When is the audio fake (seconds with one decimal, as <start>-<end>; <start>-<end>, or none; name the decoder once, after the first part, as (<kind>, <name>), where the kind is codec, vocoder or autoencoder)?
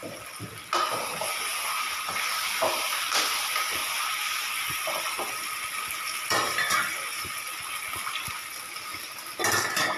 2.1-3.8 (vocoder, BigVGAN v2); 9.0-10.0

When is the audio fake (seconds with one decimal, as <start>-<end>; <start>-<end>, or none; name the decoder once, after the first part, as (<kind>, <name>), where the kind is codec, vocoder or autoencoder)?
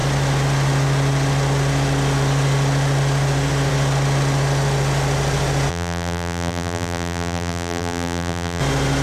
5.7-8.6 (vocoder, BigVGAN v2)